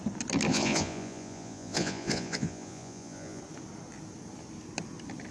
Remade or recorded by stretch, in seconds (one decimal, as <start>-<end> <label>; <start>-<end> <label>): 0.0-0.5 recorded; 0.5-3.4 remade; 3.4-5.3 recorded